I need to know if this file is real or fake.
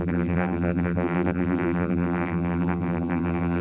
fake